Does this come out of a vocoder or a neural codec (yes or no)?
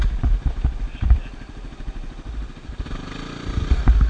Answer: no